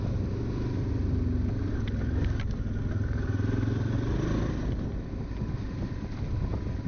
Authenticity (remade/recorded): recorded